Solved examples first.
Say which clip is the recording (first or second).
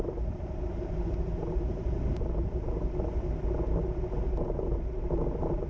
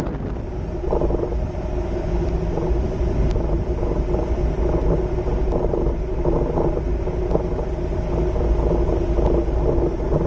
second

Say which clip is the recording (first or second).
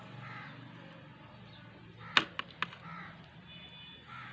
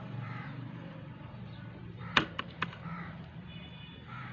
first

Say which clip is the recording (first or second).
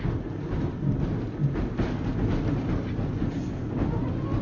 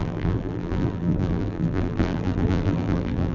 first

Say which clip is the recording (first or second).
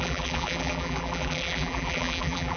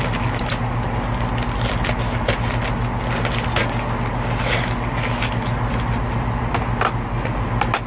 second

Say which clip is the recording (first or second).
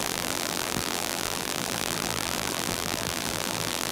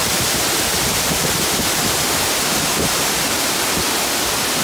second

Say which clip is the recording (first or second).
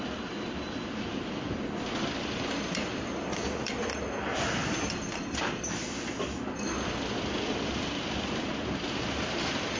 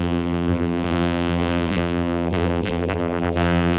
first